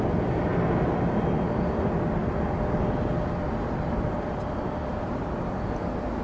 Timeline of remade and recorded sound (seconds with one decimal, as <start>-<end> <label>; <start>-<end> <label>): 0.0-0.5 recorded; 0.5-2.0 remade; 2.0-6.2 recorded